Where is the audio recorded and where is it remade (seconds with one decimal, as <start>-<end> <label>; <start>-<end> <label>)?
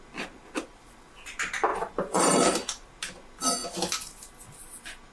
0.0-1.7 recorded; 1.7-3.0 remade; 3.0-5.1 recorded